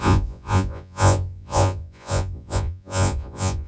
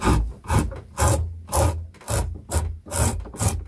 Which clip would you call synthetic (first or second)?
first